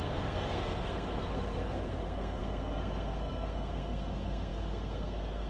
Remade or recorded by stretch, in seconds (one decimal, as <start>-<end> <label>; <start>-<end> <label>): 0.0-5.5 remade